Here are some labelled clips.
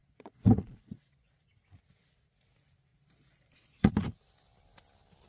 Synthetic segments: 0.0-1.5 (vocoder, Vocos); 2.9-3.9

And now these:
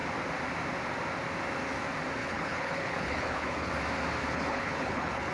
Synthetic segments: 2.2-3.7 (codec, HILCodec); 4.2-5.3